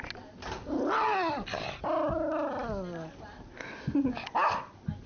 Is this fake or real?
real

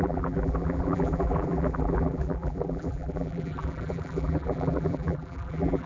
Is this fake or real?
fake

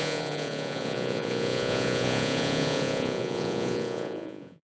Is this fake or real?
fake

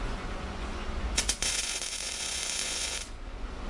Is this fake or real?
fake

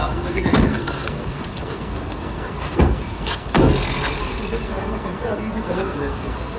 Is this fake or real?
fake